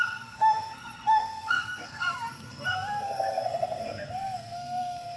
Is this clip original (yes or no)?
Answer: no